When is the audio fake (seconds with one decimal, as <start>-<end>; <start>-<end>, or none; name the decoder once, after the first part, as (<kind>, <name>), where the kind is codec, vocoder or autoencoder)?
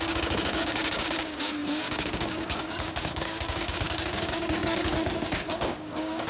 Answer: 0.0-6.3 (codec, DAC)